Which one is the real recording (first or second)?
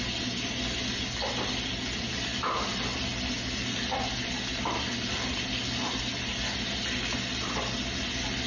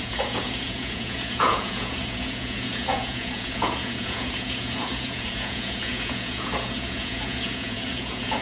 first